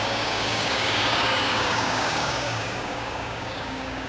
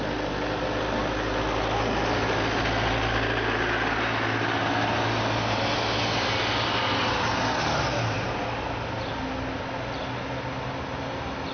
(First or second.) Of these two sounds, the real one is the second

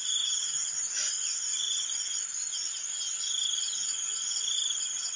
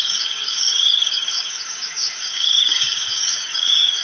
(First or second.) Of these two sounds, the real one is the first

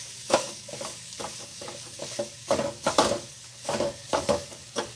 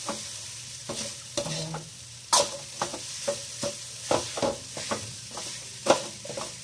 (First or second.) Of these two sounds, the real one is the second